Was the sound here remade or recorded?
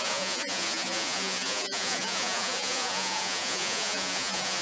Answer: remade